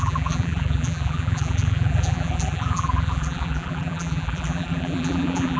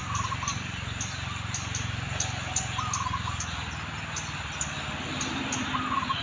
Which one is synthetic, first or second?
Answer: first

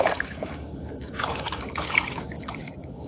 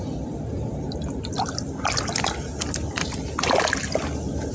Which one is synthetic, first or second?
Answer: first